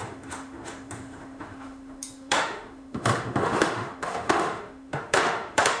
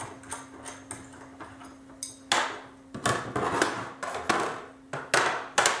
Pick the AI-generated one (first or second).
first